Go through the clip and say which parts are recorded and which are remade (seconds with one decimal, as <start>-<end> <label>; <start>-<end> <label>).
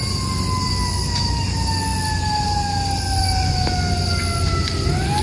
0.0-5.2 recorded